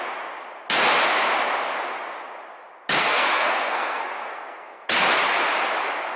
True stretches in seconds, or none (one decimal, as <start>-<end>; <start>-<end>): 0.0-3.0; 4.8-6.2